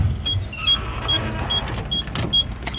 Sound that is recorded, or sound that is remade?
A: recorded